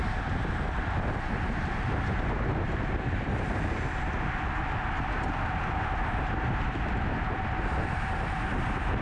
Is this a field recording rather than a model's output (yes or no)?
yes